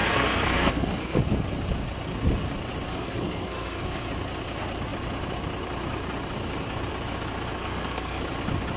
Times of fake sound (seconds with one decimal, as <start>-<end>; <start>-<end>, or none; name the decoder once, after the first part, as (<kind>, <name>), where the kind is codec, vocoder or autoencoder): 0.0-1.2 (codec, SNAC); 2.9-4.1; 7.6-8.2